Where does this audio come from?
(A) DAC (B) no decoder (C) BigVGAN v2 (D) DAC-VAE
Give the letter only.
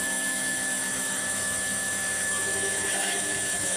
D